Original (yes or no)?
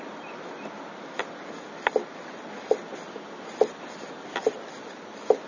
yes